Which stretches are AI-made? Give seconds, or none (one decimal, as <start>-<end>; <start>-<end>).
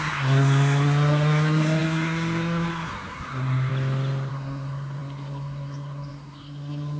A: 0.0-3.7; 4.3-7.0